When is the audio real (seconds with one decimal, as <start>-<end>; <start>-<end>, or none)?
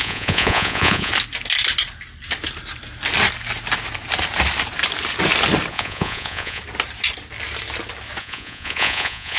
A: 1.1-5.7; 6.6-8.2